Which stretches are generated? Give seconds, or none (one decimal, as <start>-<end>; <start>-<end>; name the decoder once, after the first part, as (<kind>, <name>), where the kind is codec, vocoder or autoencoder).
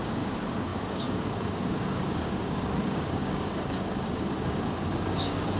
0.0-5.6 (codec, DAC)